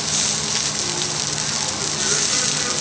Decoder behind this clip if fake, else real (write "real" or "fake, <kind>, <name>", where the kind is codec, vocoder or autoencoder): real